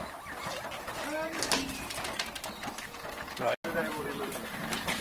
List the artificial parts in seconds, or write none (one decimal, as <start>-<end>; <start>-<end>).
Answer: none